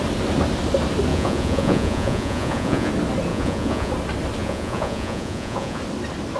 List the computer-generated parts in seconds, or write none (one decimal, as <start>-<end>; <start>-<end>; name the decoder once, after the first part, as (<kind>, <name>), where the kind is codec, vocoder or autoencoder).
1.1-2.9 (vocoder, Vocos); 3.3-3.9; 4.4-5.8